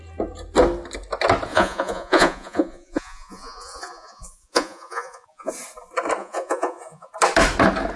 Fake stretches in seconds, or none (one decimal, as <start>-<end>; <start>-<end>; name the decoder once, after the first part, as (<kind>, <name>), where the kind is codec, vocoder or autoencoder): 1.5-5.5 (vocoder, Vocos); 6.2-7.1